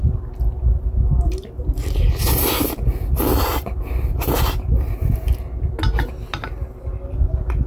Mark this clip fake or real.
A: real